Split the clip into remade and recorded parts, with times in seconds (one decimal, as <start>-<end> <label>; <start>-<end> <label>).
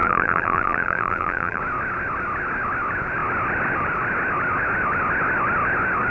0.0-1.6 remade; 1.6-6.1 recorded